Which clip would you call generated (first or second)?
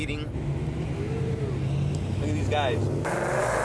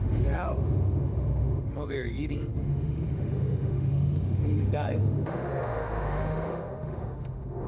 second